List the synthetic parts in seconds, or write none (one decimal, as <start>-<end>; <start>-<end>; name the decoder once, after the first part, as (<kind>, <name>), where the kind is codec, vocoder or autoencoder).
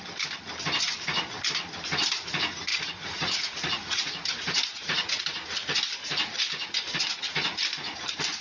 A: 2.7-5.2 (vocoder, Vocos)